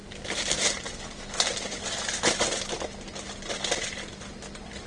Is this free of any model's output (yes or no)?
yes